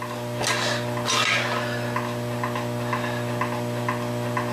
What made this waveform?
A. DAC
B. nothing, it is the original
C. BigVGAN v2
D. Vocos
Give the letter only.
B